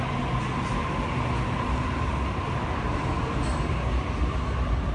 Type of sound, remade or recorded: recorded